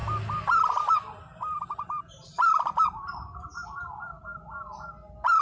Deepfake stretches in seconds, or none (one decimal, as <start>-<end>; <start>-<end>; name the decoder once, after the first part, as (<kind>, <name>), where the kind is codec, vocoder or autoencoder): 1.2-5.4 (vocoder, BigVGAN v2)